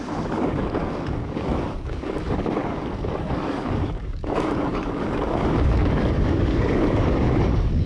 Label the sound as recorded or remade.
remade